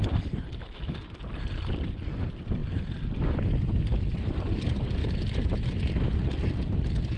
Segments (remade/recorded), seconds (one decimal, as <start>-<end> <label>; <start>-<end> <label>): 0.0-2.6 remade; 2.6-3.6 recorded; 3.6-5.0 remade; 5.0-7.2 recorded